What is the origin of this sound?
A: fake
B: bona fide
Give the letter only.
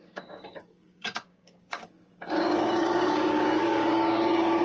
A